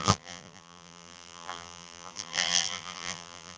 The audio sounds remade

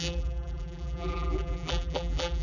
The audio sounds remade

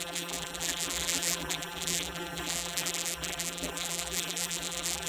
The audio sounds remade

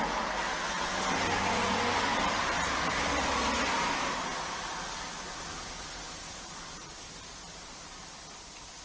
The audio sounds recorded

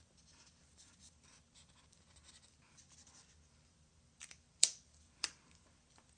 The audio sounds remade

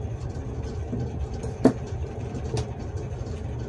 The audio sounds recorded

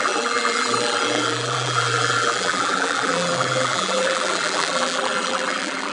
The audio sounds remade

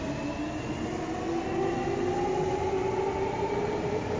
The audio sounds recorded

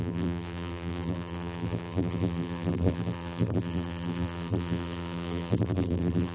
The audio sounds remade